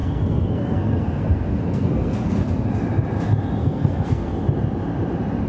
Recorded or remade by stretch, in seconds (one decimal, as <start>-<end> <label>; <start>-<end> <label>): 0.0-2.5 remade; 2.5-3.6 recorded; 3.6-4.3 remade; 4.3-5.5 recorded